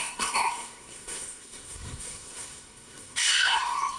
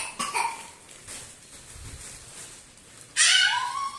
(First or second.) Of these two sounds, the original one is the second